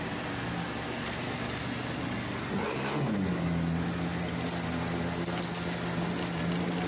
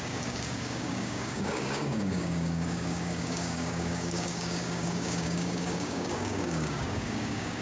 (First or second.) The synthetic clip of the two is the second